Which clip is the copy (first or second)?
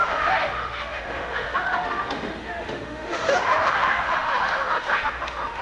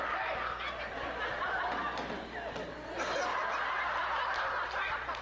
first